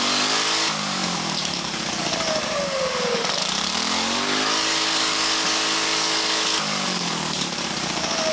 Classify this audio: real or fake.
fake